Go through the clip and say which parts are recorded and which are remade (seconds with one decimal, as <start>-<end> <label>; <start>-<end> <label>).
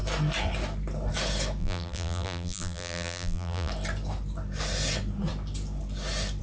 0.0-1.6 recorded; 1.6-3.7 remade; 3.7-6.4 recorded